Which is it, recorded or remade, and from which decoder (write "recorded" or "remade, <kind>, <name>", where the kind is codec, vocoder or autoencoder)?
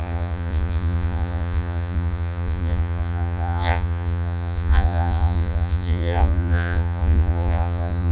remade, vocoder, Vocos